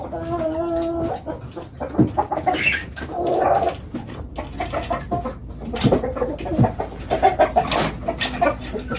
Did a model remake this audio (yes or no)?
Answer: no